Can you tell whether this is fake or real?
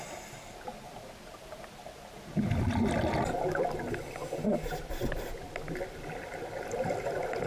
real